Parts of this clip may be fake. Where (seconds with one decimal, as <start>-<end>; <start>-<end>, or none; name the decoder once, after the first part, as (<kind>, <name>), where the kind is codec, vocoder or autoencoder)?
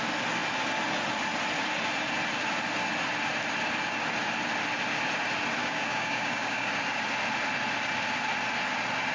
5.6-6.7 (codec, DAC)